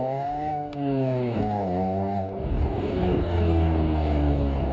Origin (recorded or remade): remade